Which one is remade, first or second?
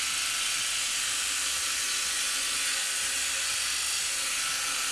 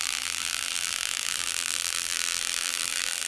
second